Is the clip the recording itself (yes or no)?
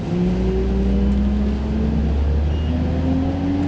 yes